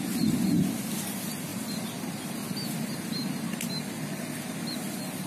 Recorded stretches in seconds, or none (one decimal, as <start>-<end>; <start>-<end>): 0.0-5.3

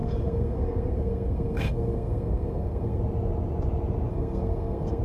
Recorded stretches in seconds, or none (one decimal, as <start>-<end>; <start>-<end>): 3.0-4.1

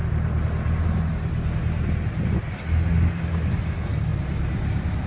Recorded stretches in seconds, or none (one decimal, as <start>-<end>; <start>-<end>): 0.0-5.1

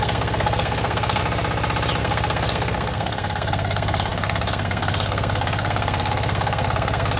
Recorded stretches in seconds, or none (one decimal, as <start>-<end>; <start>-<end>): 1.2-2.0

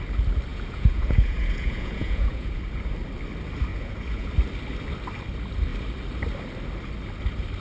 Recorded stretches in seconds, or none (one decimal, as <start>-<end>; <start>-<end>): 0.0-0.5; 2.6-3.7; 4.3-7.6

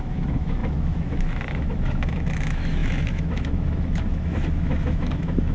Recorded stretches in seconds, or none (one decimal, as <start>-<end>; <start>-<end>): none

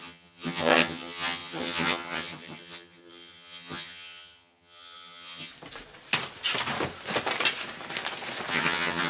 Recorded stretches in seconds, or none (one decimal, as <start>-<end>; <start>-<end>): 5.5-8.5